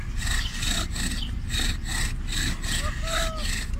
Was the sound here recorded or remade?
recorded